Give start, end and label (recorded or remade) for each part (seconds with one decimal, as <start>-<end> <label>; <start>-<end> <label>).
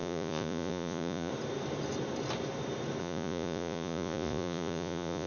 0.0-1.3 remade; 1.3-3.0 recorded; 3.0-5.3 remade